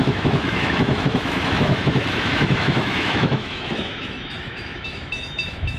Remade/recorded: remade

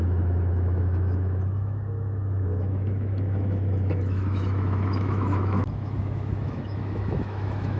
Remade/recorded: remade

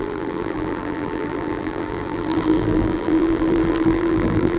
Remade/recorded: remade